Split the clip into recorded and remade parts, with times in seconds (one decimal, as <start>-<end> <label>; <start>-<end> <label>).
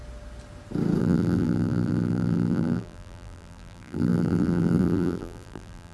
0.0-1.0 recorded; 1.0-5.9 remade